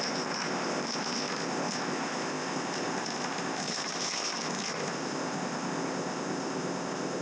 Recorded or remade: remade